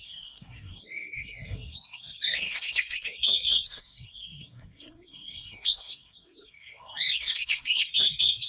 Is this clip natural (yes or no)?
no